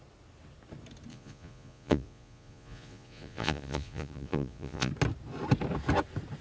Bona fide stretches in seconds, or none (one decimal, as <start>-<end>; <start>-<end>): 0.0-1.1; 4.9-6.4